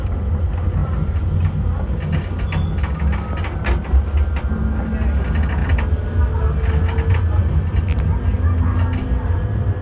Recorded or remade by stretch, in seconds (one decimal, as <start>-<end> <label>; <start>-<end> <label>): 0.0-9.8 recorded